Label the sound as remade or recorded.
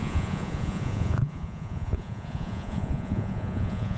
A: remade